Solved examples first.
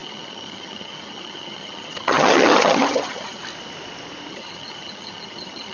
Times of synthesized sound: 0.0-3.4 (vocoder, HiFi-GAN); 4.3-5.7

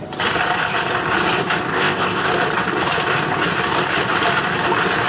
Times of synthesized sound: 1.7-2.3 (codec, ZipCodec)

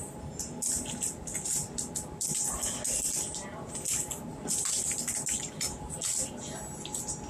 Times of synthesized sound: none

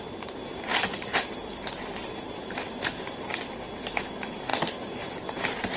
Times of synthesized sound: 0.0-4.5 (vocoder, BigVGAN v2)

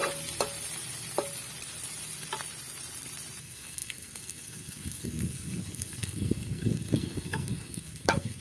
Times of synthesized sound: 3.4-8.4 (codec, SNAC)

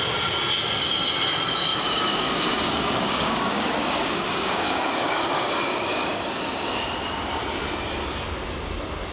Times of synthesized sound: 1.7-6.8 (codec, DAC)

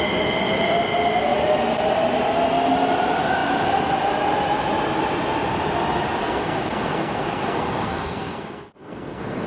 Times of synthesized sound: 6.2-9.5 (codec, SNAC)